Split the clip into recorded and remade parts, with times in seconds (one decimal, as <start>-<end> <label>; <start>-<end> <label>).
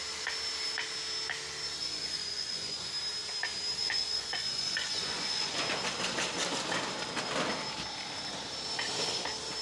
0.0-1.8 recorded; 1.8-2.9 remade; 2.9-3.8 recorded; 3.8-5.6 remade; 5.6-9.6 recorded